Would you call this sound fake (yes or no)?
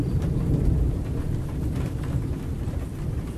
yes